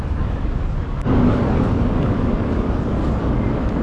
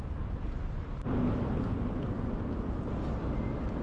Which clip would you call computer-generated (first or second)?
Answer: first